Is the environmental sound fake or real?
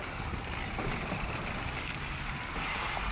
real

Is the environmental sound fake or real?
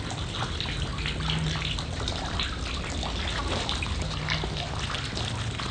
real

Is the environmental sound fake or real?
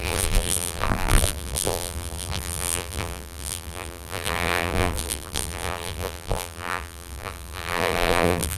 fake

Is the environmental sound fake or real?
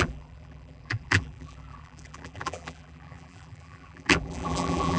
fake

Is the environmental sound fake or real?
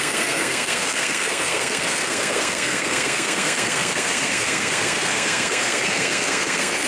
fake